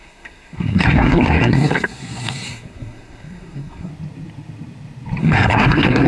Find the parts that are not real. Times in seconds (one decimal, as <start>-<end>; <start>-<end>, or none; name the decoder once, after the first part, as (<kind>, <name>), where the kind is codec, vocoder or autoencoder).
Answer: 0.0-3.9 (codec, SNAC); 5.2-6.1